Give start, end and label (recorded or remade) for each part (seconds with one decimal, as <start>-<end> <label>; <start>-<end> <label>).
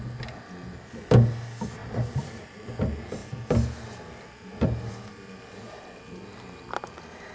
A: 0.0-1.8 recorded; 1.8-2.7 remade; 2.7-7.3 recorded